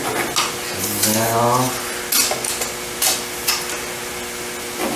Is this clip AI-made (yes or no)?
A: no